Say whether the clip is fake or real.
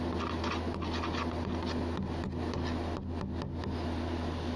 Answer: real